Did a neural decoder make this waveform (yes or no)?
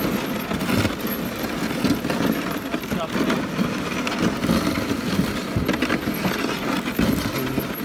no